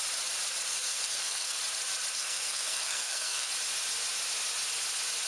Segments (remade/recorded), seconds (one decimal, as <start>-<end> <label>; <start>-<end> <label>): 0.0-0.7 recorded; 0.7-1.6 remade; 1.6-2.2 recorded; 2.2-3.5 remade; 3.5-5.3 recorded